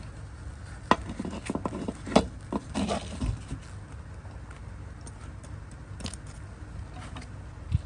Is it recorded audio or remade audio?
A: recorded